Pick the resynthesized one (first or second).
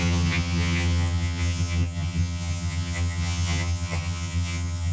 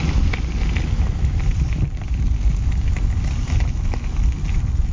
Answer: first